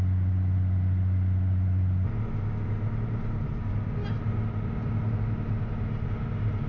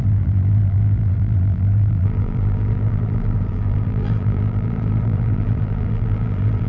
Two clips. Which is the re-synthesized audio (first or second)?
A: second